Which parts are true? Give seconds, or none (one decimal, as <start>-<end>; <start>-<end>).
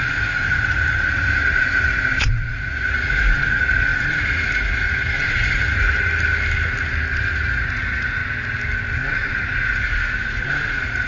6.1-7.2; 8.2-9.1